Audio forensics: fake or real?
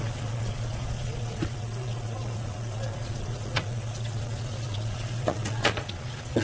fake